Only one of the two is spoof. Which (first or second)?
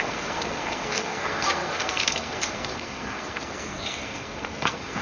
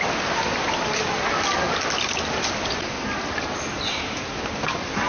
first